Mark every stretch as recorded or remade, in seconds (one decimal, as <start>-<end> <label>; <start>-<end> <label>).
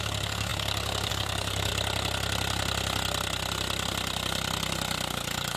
0.0-1.7 remade; 1.7-5.1 recorded; 5.1-5.6 remade